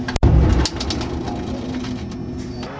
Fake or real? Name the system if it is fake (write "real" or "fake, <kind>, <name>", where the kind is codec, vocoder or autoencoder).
real